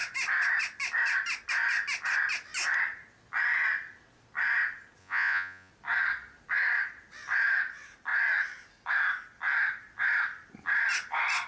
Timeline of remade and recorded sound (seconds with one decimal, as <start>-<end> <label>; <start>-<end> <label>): 0.0-5.0 recorded; 5.0-5.7 remade; 5.7-11.5 recorded